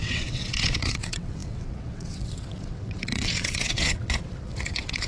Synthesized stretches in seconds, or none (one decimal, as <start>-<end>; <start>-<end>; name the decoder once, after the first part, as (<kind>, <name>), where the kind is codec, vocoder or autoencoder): 0.0-5.1 (vocoder, WaveNeXt)